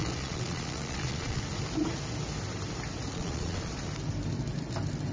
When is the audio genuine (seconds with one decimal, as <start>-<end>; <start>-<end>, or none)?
1.4-3.1; 3.7-5.1